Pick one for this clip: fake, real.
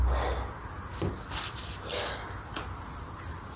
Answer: real